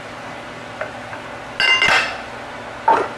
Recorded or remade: recorded